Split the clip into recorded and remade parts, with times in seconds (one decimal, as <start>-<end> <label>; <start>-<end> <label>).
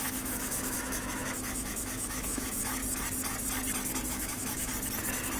0.0-2.8 remade; 2.8-4.1 recorded; 4.1-4.7 remade; 4.7-5.4 recorded